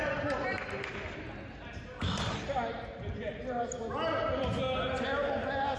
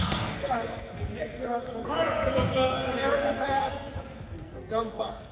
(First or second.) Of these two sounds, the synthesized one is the second